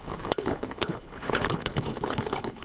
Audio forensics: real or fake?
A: fake